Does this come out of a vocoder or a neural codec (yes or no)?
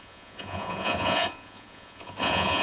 yes